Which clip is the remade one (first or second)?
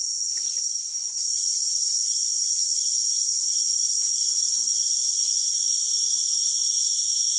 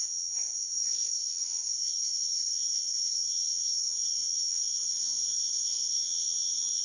second